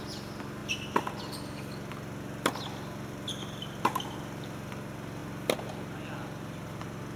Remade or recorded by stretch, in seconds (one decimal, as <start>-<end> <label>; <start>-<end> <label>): 0.0-7.2 recorded